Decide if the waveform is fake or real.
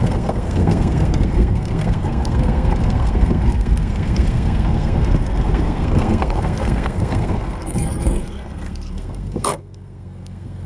fake